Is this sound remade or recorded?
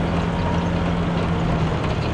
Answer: recorded